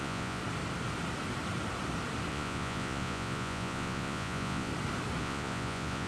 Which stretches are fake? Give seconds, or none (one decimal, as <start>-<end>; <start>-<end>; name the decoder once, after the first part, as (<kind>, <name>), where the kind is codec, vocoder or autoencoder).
0.0-0.4 (vocoder, Vocos); 2.3-4.7; 5.2-6.1